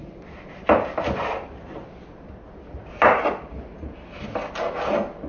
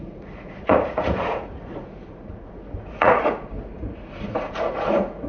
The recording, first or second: first